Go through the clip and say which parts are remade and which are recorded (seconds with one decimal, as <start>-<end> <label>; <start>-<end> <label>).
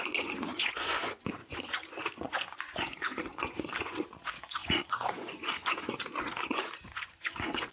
0.0-7.7 remade